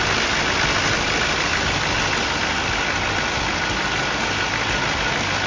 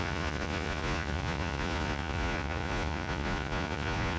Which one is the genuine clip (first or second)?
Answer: first